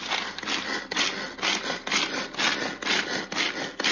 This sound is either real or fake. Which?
real